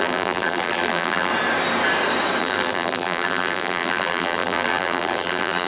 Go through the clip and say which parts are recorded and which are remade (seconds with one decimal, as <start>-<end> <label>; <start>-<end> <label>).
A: 0.0-1.3 remade; 1.3-2.4 recorded; 2.4-5.7 remade